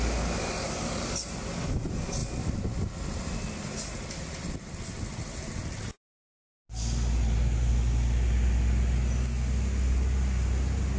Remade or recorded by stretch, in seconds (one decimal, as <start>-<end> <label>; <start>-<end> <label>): 0.0-11.0 recorded